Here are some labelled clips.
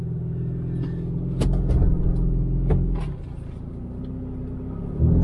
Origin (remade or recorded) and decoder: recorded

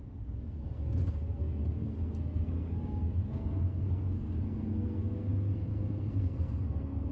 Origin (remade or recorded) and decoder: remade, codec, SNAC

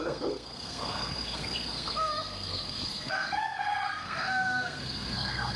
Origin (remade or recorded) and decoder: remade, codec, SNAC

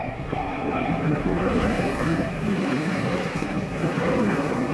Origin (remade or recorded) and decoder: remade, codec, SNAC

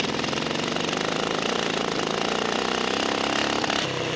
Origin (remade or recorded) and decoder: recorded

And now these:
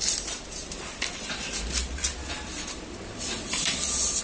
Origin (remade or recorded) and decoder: recorded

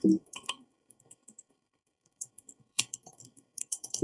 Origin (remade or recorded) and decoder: remade, codec, SNAC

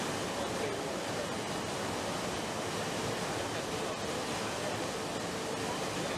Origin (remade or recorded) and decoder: recorded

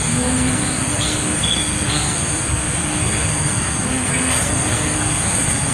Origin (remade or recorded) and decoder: remade, codec, SNAC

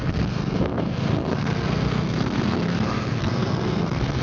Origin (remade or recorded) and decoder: remade, codec, SNAC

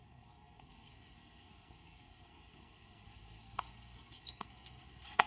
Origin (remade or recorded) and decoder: remade, codec, SNAC